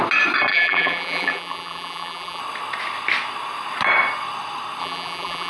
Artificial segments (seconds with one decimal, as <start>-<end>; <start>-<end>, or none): 0.5-2.4; 4.8-5.5